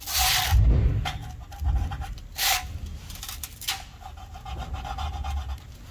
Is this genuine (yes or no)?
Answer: yes